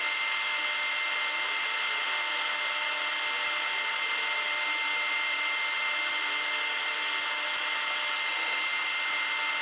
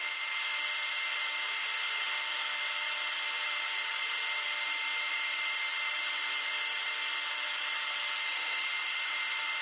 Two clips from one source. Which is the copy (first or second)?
second